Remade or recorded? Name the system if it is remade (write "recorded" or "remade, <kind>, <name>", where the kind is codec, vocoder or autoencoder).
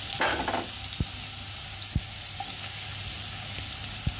recorded